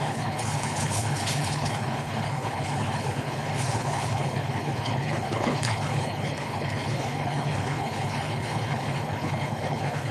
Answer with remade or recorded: remade